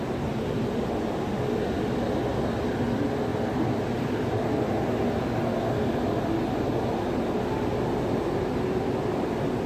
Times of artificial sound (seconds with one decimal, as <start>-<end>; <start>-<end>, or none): 3.3-4.5

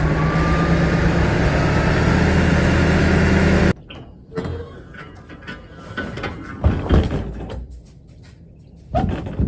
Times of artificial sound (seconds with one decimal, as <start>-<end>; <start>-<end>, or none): 3.0-3.6

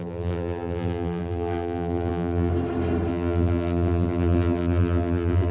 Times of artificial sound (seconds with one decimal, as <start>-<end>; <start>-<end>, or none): 0.0-2.5; 3.1-5.5

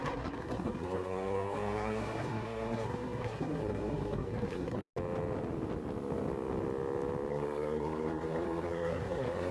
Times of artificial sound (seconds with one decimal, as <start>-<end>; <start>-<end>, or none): 0.0-4.9; 7.3-9.5

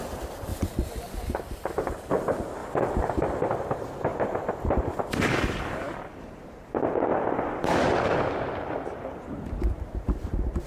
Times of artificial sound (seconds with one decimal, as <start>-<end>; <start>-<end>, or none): 0.5-2.1; 2.6-3.2; 4.1-6.1; 7.1-9.2

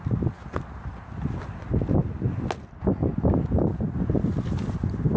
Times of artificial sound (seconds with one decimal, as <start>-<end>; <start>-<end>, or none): none

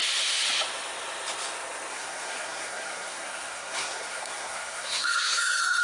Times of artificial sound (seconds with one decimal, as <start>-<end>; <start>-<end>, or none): 1.9-5.8